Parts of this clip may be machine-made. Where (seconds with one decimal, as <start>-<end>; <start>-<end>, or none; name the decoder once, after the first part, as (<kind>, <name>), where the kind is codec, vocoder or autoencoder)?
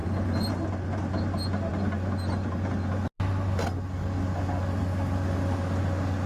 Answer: none